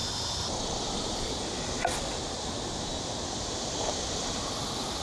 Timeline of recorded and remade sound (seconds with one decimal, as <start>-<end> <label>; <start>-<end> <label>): 0.0-5.0 recorded